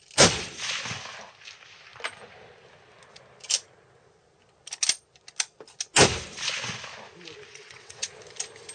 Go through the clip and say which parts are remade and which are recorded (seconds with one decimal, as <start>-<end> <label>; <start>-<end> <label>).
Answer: 0.0-7.5 recorded; 7.5-8.1 remade; 8.1-8.7 recorded